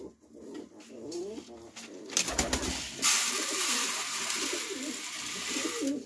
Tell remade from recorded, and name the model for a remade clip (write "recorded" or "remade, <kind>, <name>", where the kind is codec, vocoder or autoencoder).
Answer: recorded